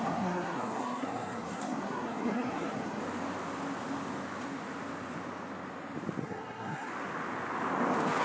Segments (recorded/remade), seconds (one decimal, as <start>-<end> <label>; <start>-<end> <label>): 0.0-3.0 remade; 3.0-6.2 recorded; 6.2-6.9 remade; 6.9-8.2 recorded